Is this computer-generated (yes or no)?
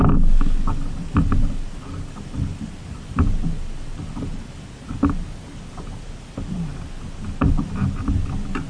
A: no